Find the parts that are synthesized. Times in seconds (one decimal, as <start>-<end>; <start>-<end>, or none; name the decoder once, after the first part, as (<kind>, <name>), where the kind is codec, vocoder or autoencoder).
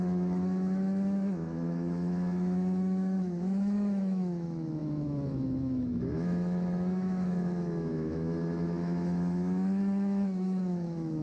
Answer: 0.0-11.2 (autoencoder, DAC-VAE)